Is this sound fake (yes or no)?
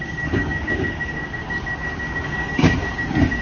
yes